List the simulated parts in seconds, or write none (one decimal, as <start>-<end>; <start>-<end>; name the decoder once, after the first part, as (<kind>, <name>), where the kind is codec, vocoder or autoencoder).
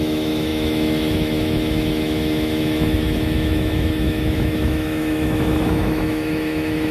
0.0-6.9 (autoencoder, DAC-VAE)